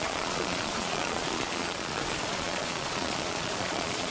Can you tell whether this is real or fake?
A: fake